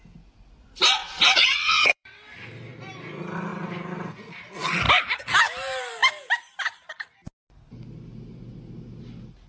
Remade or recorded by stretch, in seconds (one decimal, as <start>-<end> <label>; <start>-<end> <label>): 0.0-1.0 recorded; 1.0-2.2 remade; 2.2-9.5 recorded